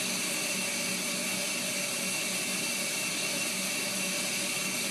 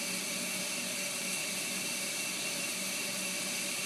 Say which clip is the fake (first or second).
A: second